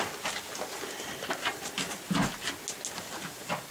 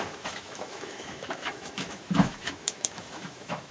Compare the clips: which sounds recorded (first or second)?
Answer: first